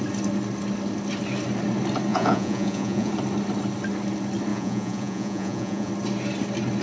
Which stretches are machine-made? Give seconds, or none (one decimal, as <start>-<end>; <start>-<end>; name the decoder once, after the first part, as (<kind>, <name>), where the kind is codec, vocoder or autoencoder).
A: 2.1-3.1 (vocoder, Vocos); 4.5-5.9